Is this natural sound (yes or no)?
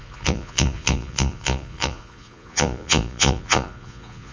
no